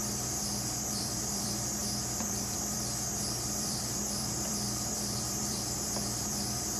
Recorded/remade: remade